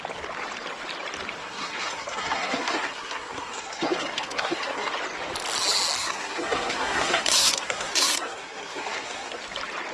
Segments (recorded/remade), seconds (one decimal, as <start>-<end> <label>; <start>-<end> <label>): 0.0-1.4 recorded; 1.4-4.9 remade; 4.9-6.0 recorded; 6.0-9.4 remade; 9.4-9.9 recorded